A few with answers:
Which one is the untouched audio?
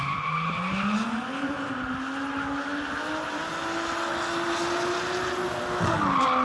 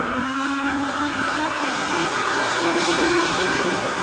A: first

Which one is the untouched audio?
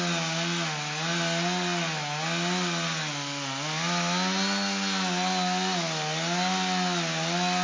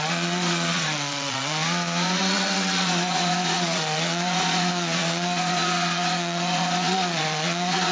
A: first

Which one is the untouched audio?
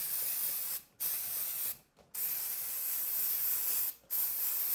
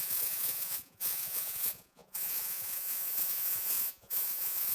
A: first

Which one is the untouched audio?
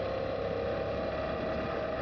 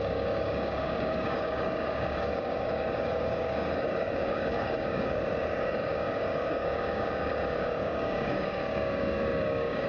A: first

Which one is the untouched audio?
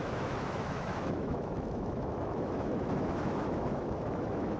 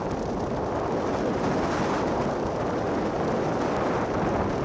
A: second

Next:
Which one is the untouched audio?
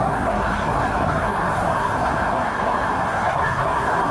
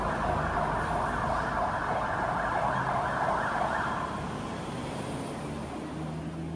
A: second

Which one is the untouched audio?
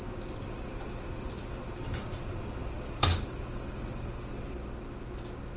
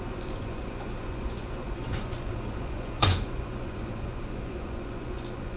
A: first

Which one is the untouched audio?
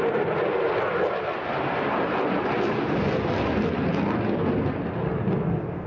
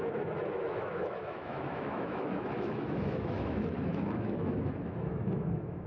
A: first